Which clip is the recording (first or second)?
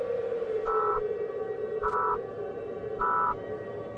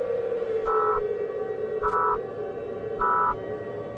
second